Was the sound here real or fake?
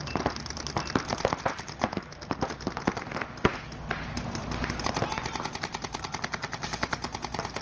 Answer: real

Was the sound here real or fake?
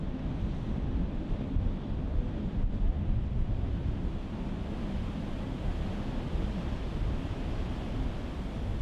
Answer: real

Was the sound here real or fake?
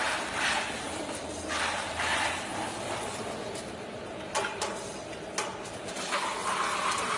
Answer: real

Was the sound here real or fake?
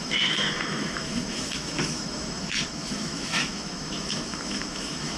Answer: fake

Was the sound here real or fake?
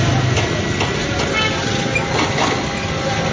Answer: real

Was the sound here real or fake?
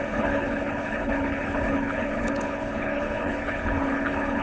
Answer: fake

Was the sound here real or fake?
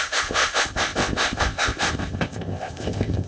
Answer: fake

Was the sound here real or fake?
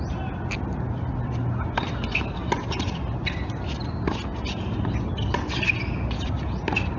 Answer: real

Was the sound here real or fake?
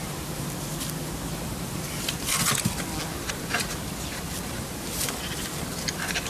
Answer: real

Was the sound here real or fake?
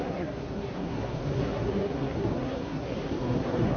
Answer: fake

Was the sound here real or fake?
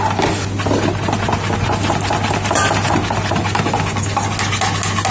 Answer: real